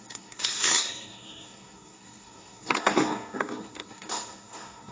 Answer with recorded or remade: remade